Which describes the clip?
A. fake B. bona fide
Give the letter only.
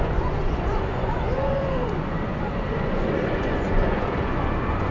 A